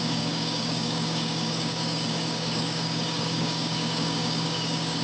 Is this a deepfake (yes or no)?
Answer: yes